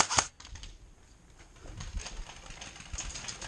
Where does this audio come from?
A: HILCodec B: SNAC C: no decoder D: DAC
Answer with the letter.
C